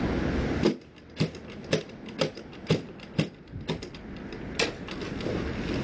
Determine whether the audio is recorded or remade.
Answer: recorded